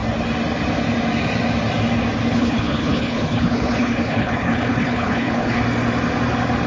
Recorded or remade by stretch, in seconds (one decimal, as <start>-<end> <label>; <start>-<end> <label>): 0.0-2.3 recorded; 2.3-5.6 remade; 5.6-6.7 recorded